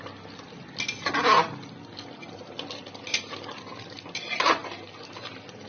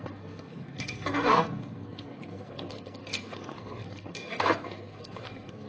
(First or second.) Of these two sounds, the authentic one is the first